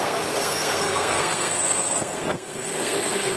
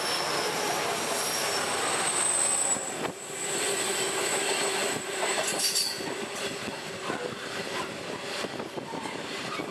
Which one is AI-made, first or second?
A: first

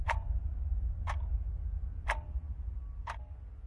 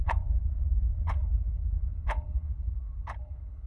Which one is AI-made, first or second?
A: second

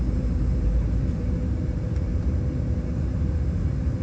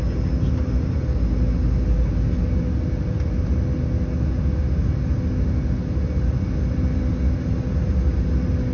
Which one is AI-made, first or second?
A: first